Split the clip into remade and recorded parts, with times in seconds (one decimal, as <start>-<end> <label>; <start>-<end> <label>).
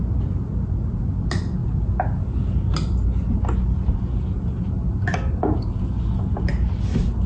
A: 0.0-7.3 recorded